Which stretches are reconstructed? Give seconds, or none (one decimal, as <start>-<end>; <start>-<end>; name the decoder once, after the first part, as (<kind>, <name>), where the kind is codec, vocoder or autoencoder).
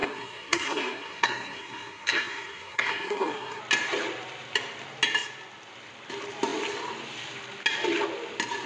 0.0-3.6 (codec, SNAC)